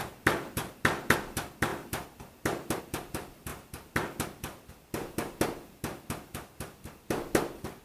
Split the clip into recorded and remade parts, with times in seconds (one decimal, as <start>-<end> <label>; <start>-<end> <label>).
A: 0.0-7.8 recorded